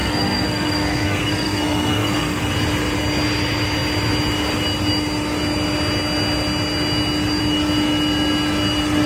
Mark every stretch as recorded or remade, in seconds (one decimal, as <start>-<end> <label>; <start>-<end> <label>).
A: 0.0-2.5 remade; 2.5-9.1 recorded